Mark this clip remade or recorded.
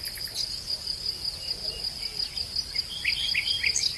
recorded